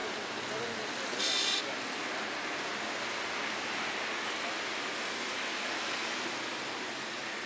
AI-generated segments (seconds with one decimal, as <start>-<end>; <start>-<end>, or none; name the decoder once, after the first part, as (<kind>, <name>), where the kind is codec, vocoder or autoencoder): none